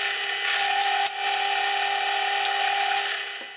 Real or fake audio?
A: real